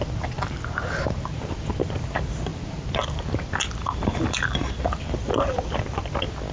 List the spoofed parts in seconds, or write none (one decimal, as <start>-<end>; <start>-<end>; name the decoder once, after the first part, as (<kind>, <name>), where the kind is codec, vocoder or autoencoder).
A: none